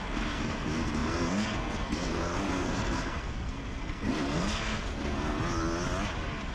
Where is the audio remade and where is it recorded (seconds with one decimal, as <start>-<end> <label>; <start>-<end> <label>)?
0.0-5.4 remade; 5.4-6.5 recorded